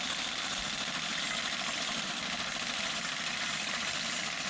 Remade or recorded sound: recorded